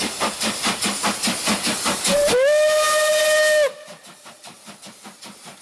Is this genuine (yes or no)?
yes